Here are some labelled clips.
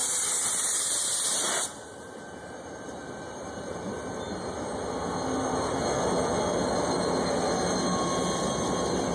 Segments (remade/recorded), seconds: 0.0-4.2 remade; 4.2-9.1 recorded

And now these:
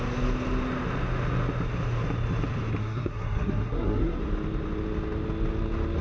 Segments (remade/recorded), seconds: 0.0-2.8 recorded; 2.8-4.2 remade; 4.2-6.0 recorded

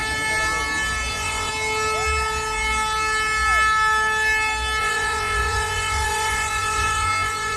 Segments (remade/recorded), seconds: 0.0-1.1 recorded; 1.1-1.5 remade; 1.5-4.8 recorded; 4.8-7.6 remade

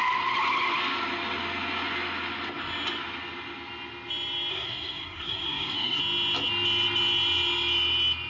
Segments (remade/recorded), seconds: 0.0-4.5 recorded; 4.5-6.0 remade; 6.0-8.3 recorded

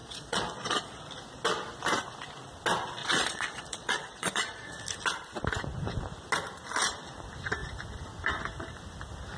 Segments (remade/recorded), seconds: 0.0-1.0 remade; 1.0-3.0 recorded; 3.0-4.8 remade; 4.8-9.4 recorded

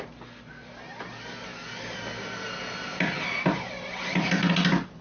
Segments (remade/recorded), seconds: 0.0-5.0 recorded